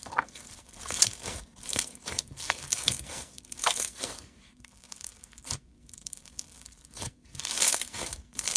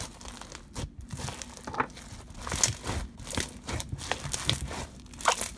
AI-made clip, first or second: first